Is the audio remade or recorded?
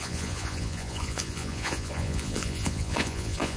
remade